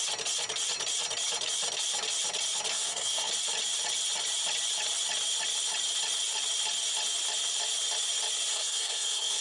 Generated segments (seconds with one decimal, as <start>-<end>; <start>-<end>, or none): 2.7-3.3; 8.5-9.4